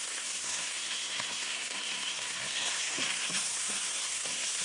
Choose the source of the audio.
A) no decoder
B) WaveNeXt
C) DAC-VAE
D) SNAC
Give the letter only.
D